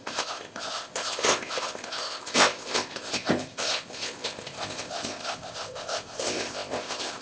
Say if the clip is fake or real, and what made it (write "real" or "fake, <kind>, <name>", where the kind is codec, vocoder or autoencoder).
fake, codec, ZipCodec